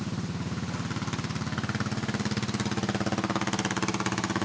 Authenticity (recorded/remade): recorded